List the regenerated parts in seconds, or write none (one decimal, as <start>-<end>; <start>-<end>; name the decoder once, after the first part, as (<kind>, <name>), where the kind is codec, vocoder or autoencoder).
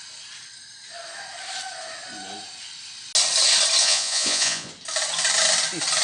3.8-4.7 (vocoder, Vocos)